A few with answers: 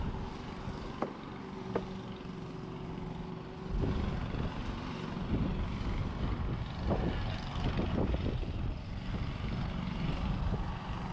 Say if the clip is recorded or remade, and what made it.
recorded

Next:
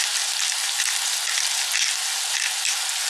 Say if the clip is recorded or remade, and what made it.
recorded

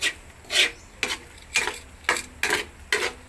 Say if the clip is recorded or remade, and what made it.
recorded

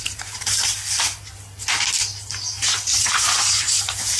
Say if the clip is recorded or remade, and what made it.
remade, vocoder, BigVGAN v2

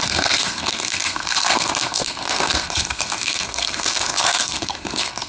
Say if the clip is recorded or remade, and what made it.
remade, codec, SNAC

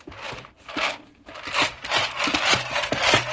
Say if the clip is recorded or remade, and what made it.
recorded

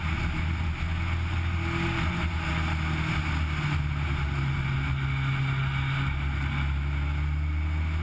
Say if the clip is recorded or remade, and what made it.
recorded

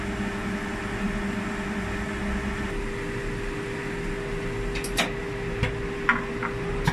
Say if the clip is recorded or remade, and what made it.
recorded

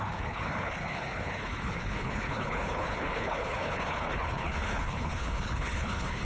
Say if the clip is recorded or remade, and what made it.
remade, codec, HILCodec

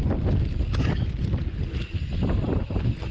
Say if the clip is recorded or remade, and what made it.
recorded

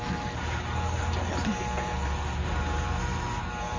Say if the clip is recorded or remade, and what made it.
remade, vocoder, BigVGAN v2